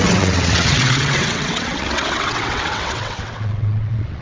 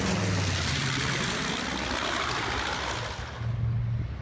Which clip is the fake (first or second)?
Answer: first